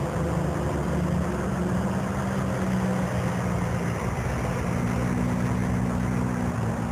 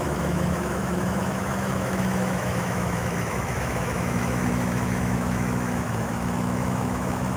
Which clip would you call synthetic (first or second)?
second